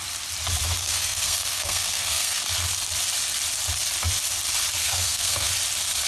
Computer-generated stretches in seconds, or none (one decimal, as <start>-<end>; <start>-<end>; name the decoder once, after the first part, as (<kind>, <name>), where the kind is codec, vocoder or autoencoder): 0.8-2.4 (codec, SNAC); 4.8-5.5